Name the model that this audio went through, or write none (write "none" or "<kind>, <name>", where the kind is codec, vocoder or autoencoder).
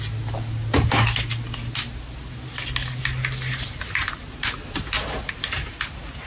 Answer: none